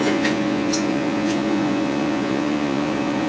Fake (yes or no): yes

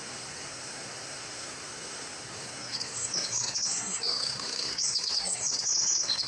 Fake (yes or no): yes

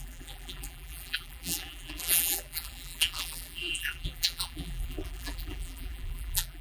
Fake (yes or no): yes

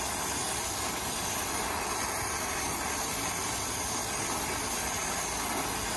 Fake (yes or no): no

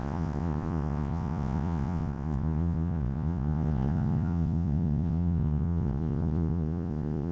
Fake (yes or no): yes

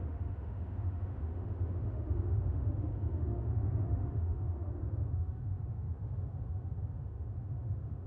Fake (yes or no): yes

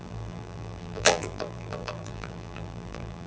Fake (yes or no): yes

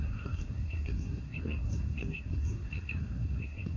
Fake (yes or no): yes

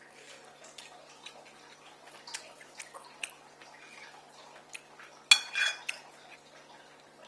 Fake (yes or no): no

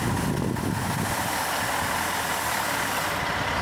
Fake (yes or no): no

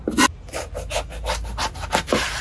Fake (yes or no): no